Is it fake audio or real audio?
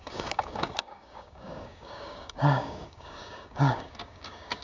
fake